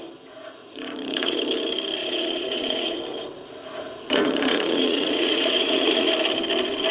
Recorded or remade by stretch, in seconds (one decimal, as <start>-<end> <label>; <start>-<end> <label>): 0.0-0.6 recorded; 0.6-1.4 remade; 1.4-2.0 recorded; 2.0-3.0 remade; 3.0-3.6 recorded; 3.6-6.1 remade; 6.1-6.9 recorded